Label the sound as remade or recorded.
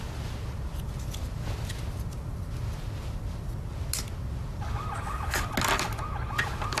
recorded